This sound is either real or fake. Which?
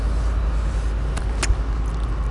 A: real